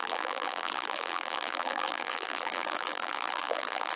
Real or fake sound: fake